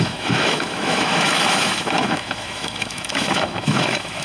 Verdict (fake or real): fake